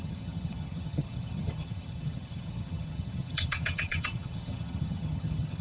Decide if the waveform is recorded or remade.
remade